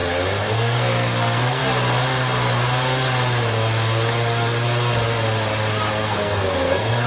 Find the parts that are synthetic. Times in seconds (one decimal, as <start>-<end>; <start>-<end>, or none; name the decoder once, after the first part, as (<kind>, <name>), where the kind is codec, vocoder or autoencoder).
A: 0.5-1.6 (codec, SNAC); 5.9-7.1